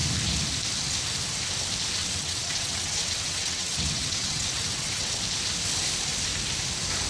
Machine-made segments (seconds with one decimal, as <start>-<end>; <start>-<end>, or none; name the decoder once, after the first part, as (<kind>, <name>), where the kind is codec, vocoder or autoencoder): 2.0-5.2 (vocoder, WaveNeXt)